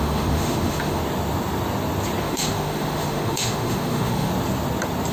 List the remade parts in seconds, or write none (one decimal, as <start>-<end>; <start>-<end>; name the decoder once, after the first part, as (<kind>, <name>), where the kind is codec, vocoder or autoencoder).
0.0-1.0 (autoencoder, DAC-VAE); 2.2-4.3